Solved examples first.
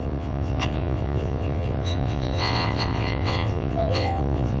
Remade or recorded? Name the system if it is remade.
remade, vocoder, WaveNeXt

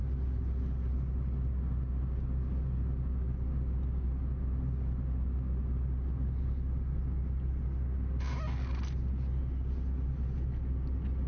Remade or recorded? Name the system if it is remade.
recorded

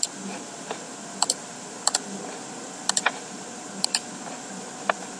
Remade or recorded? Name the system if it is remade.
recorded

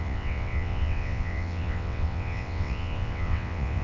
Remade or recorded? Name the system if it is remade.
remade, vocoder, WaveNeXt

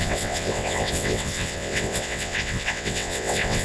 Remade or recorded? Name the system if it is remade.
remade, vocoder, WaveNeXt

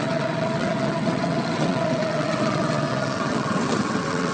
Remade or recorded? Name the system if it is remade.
remade, vocoder, WaveNeXt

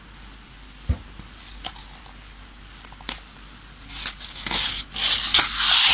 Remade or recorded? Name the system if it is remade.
recorded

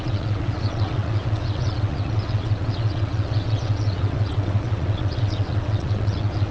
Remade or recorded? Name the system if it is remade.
remade, vocoder, WaveNeXt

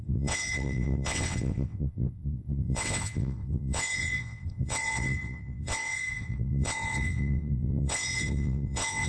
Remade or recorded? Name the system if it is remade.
remade, vocoder, WaveNeXt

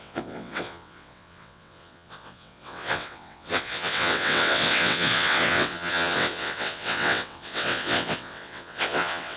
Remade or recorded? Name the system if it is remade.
remade, vocoder, WaveNeXt